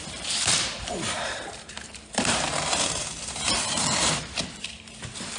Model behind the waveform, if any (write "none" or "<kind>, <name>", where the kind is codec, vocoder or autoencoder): vocoder, BigVGAN v2